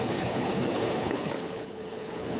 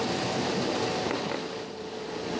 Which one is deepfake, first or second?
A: first